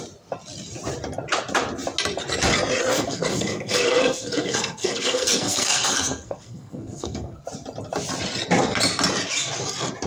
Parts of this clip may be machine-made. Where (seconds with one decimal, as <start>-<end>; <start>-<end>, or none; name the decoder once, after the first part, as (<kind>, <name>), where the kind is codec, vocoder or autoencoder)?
2.9-7.4 (codec, SNAC)